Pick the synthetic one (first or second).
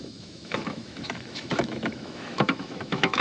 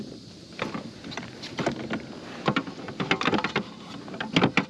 first